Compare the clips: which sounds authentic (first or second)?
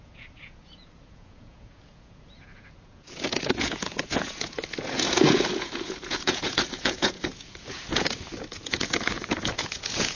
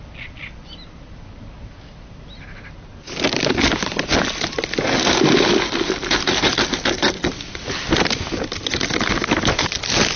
second